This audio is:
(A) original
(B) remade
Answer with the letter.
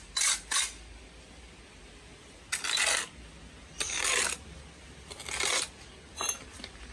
A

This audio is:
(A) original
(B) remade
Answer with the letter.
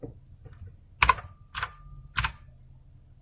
A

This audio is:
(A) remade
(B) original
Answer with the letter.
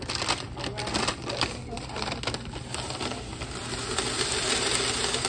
B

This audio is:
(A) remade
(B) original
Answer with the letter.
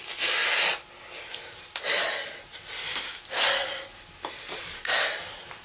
B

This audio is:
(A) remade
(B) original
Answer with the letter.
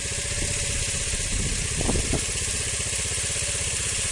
B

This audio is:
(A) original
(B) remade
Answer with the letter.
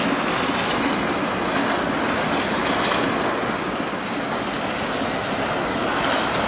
A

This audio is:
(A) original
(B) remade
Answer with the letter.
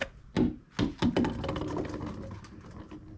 A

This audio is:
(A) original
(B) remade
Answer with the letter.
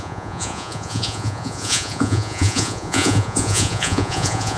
B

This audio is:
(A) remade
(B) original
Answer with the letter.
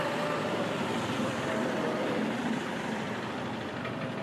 B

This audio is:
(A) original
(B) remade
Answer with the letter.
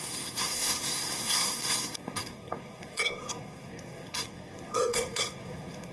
B